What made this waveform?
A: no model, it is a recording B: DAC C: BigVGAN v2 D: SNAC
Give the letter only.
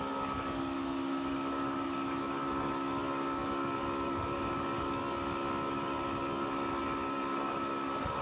B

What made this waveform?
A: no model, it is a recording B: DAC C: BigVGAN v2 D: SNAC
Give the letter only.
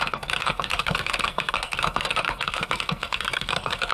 D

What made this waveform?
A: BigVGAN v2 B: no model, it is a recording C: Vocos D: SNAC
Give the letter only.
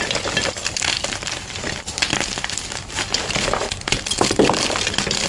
B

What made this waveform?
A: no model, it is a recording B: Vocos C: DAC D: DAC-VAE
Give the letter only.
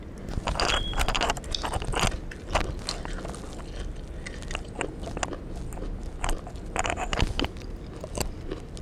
A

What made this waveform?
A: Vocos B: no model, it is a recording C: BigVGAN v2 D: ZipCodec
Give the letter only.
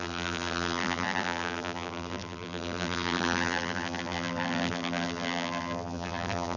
C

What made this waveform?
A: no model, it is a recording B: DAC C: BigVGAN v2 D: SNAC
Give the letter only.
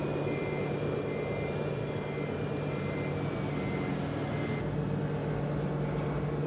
A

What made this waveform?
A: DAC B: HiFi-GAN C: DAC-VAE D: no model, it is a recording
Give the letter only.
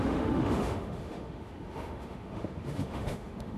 C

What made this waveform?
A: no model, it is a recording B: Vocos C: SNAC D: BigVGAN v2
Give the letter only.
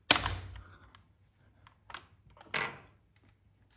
A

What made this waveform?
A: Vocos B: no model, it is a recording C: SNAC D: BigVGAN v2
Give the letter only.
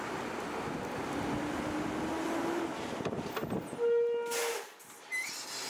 B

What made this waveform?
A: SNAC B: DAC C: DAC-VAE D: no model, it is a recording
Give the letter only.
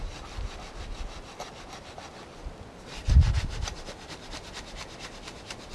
D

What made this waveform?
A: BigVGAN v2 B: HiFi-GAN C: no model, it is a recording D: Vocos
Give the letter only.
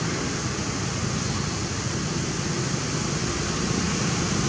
A